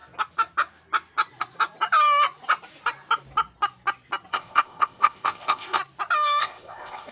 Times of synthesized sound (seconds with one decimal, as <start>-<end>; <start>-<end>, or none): 4.3-5.8; 6.4-7.1